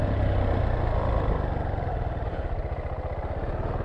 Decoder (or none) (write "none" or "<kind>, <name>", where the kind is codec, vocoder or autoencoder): none